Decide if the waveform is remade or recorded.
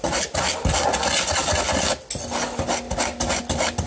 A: recorded